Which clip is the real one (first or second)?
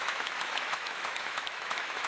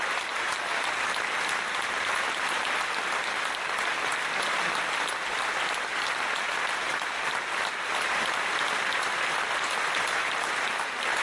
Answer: second